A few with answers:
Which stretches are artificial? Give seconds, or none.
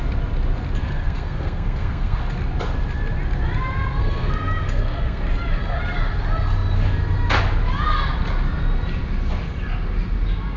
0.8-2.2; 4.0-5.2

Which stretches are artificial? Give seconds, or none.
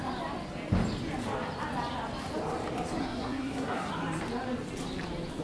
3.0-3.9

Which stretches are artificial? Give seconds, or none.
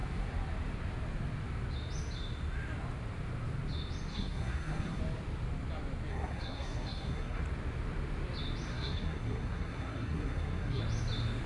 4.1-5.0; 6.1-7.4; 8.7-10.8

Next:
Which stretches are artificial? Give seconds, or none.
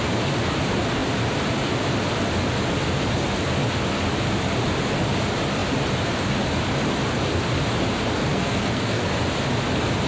8.3-9.0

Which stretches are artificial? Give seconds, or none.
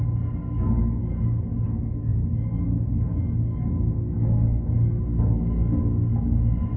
none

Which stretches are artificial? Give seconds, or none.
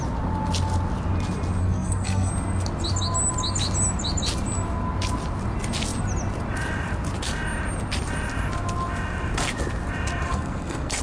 1.6-2.3; 10.3-11.0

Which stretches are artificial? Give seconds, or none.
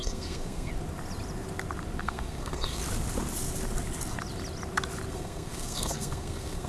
0.0-0.7; 2.0-2.8; 5.1-6.7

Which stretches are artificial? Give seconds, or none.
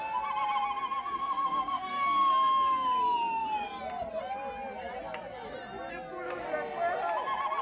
1.2-2.3